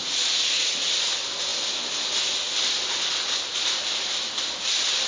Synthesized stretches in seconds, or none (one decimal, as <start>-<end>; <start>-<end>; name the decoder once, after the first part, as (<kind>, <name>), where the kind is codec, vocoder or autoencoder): 0.0-0.7 (vocoder, Vocos)